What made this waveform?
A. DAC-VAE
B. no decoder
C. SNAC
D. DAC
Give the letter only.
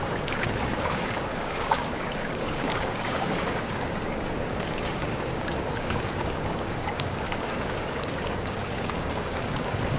D